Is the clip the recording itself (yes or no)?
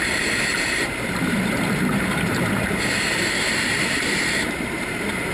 no